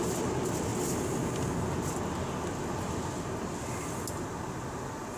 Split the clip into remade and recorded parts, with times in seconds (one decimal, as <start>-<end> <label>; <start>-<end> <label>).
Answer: 0.0-5.2 recorded